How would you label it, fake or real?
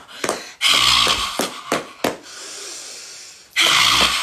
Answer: real